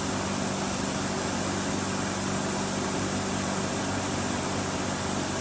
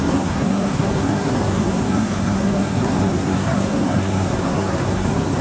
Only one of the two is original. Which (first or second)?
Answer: first